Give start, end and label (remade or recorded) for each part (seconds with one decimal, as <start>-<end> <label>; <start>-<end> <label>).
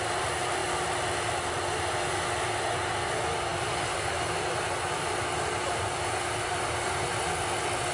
0.0-7.9 recorded